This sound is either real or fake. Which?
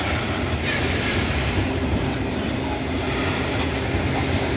fake